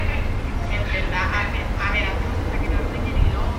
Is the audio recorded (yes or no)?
yes